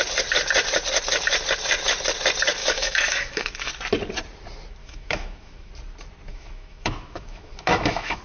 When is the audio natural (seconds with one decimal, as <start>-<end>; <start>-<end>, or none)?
0.0-2.6; 3.7-4.8; 5.7-6.3